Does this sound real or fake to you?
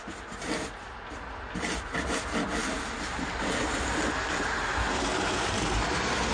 real